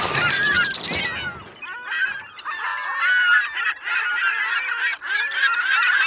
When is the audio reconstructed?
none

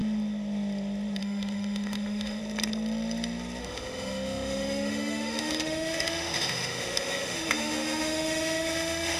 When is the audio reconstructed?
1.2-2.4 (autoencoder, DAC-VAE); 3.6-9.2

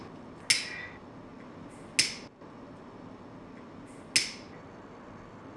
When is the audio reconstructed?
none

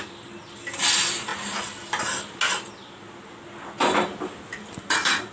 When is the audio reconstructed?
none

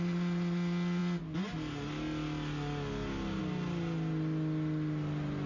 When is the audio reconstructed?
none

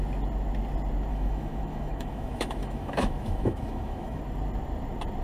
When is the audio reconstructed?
1.1-4.2 (autoencoder, DAC-VAE)

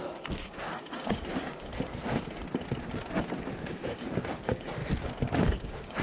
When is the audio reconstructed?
0.0-1.7 (codec, DAC); 3.7-4.8; 5.4-6.0